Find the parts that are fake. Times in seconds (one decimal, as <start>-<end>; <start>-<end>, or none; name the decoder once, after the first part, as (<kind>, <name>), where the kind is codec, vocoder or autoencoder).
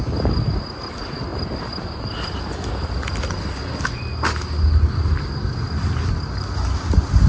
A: none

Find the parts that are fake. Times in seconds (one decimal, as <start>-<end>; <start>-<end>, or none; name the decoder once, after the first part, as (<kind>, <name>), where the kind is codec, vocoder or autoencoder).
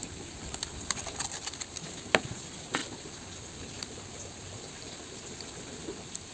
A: none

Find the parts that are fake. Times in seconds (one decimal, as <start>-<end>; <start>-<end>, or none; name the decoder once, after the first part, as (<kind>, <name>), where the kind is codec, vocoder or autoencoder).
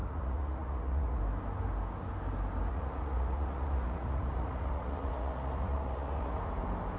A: 0.0-1.2 (vocoder, Vocos); 2.7-6.4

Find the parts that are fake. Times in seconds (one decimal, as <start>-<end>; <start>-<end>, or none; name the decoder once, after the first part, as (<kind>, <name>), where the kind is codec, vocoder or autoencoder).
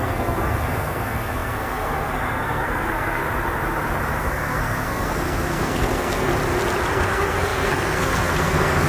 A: 0.0-3.2 (codec, SNAC); 4.2-6.3; 6.9-8.9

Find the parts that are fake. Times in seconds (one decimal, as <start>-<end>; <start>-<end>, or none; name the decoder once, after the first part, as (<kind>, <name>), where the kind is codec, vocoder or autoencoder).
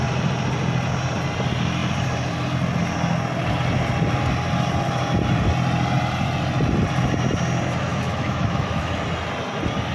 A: 7.9-9.0 (autoencoder, DAC-VAE)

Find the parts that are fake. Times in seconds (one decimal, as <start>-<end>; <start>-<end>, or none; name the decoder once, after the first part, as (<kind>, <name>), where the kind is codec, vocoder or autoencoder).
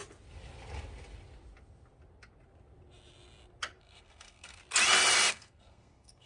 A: 3.8-4.6 (codec, SNAC); 5.3-6.3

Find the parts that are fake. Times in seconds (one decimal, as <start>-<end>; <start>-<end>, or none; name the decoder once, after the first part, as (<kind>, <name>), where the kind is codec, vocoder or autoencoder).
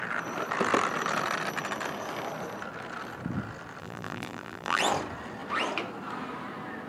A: 3.8-4.8 (vocoder, BigVGAN v2)